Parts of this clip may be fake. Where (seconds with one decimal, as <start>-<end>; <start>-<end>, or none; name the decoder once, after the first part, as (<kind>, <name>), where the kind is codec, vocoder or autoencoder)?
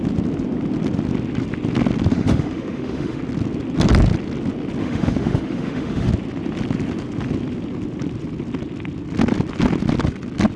2.1-3.2 (autoencoder, DAC-VAE); 4.8-6.1